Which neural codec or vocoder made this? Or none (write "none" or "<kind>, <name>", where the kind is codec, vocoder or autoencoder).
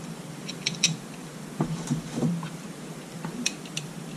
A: vocoder, BigVGAN v2